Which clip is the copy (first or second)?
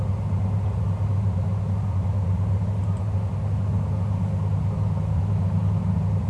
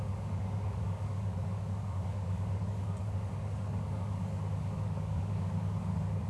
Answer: second